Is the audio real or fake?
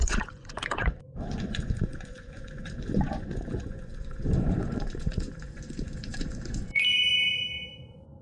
fake